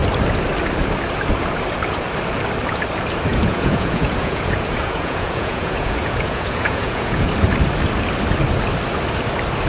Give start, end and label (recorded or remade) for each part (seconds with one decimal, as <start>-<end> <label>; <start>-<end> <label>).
0.0-3.3 recorded; 3.3-7.3 remade; 7.3-9.7 recorded